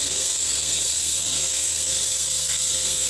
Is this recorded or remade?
remade